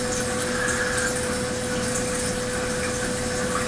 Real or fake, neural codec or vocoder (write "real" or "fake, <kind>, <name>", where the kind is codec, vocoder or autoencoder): real